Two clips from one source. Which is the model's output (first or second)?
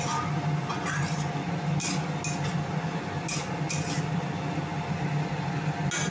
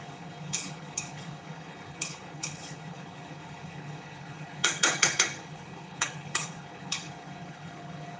second